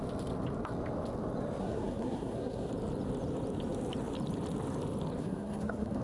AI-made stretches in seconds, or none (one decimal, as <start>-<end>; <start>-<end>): 1.6-2.7; 5.2-6.0